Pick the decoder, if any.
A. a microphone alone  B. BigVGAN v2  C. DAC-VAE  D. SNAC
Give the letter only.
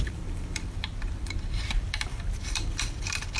B